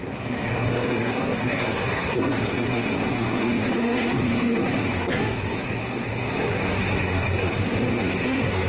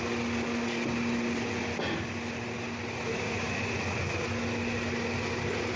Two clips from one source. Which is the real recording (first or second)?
second